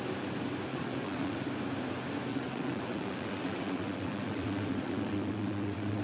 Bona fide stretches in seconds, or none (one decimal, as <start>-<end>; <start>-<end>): 0.0-0.7; 1.4-2.3